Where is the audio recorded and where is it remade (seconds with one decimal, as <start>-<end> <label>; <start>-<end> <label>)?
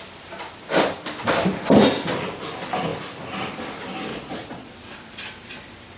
0.0-4.1 recorded; 4.1-4.7 remade; 4.7-6.0 recorded